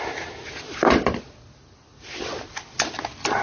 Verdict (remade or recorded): recorded